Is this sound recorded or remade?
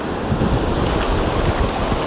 recorded